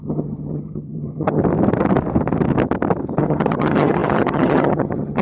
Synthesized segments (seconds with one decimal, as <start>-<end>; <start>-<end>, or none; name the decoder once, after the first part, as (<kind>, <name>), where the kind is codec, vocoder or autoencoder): 0.0-1.4 (vocoder, HiFi-GAN); 3.2-5.2